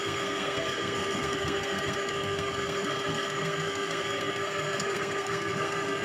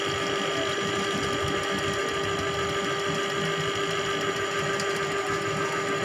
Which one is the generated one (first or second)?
first